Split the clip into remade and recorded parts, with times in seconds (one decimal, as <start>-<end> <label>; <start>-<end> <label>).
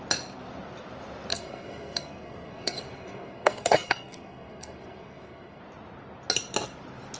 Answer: 0.0-1.3 recorded; 1.3-5.6 remade; 5.6-7.2 recorded